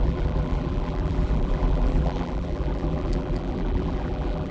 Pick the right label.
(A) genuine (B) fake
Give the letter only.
B